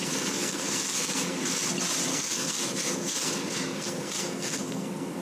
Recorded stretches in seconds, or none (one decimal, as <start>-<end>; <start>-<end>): 1.7-2.1